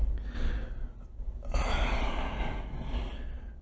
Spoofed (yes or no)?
no